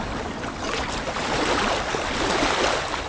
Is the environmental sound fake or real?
real